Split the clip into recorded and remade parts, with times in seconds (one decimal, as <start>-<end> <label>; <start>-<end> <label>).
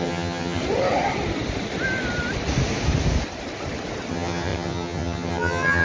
0.0-0.6 remade; 0.6-4.1 recorded; 4.1-5.8 remade